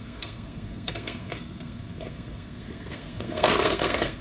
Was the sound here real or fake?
fake